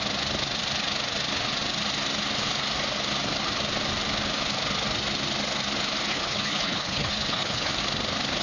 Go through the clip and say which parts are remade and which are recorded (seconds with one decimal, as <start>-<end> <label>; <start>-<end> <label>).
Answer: 0.0-6.1 recorded; 6.1-7.8 remade; 7.8-8.4 recorded